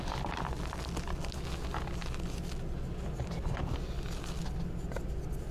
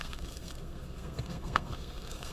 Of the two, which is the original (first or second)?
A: first